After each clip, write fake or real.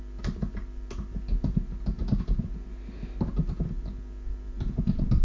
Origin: real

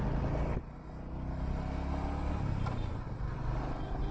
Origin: real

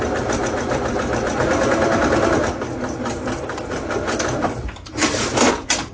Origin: fake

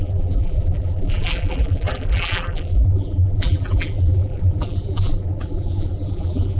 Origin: fake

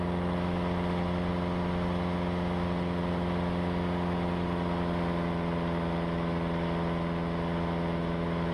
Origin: real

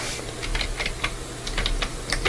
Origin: real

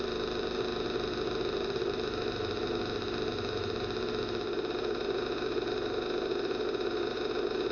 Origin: real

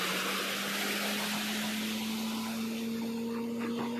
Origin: real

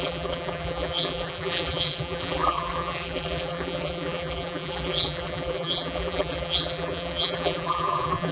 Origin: fake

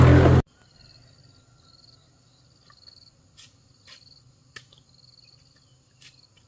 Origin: real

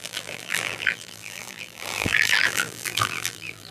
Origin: fake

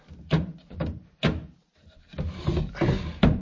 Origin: real